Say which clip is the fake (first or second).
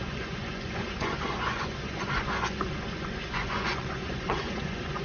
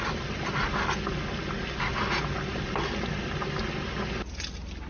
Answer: first